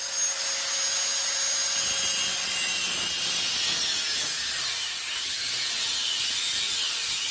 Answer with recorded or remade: recorded